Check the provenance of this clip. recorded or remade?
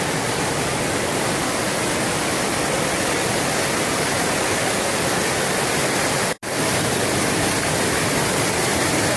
recorded